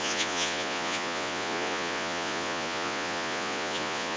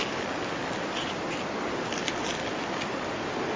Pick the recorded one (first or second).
second